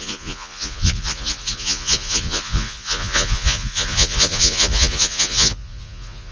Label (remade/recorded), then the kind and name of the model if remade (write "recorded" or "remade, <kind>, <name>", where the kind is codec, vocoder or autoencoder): remade, vocoder, Vocos